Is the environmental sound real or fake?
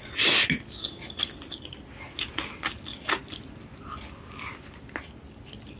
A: real